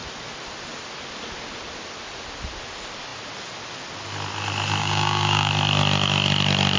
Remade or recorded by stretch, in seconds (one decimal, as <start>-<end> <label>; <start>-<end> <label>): 0.0-4.8 recorded; 4.8-5.5 remade; 5.5-6.8 recorded